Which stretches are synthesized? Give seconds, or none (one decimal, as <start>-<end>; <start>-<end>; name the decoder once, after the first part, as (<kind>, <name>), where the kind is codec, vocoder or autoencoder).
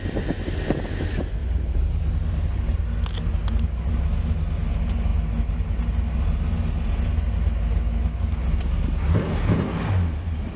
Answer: 1.4-2.1 (vocoder, BigVGAN v2)